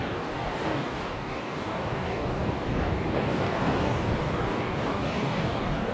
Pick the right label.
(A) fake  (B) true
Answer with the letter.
A